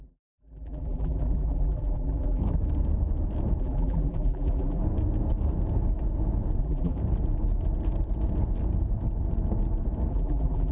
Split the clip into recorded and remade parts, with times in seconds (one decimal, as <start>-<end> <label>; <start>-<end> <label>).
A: 0.0-2.4 remade; 2.4-3.6 recorded; 3.6-4.8 remade; 4.8-6.6 recorded; 6.6-7.0 remade; 7.0-10.1 recorded; 10.1-10.7 remade